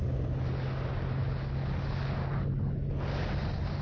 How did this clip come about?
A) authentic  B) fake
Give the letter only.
A